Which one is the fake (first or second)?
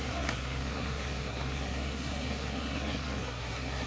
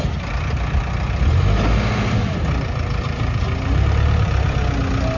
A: first